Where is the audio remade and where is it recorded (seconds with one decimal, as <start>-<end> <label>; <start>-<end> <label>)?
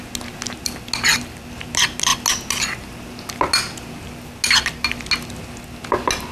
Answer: 0.0-6.3 recorded